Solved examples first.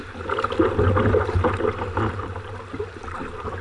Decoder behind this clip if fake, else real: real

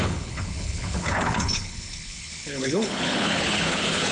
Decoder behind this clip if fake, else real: fake, codec, HILCodec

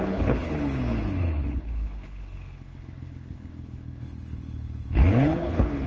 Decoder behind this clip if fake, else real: fake, codec, HILCodec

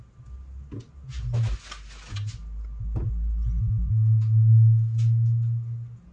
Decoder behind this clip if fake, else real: real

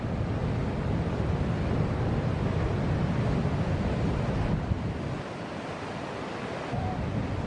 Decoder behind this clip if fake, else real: real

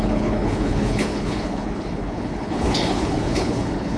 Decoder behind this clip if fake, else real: fake, codec, HILCodec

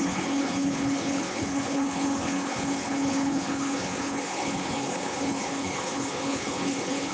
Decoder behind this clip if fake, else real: fake, codec, HILCodec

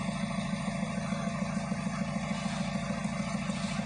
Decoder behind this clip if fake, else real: real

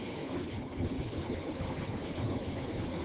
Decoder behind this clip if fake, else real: fake, codec, HILCodec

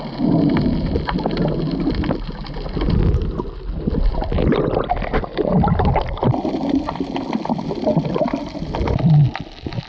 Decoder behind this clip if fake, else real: real